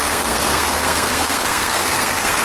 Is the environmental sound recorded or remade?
remade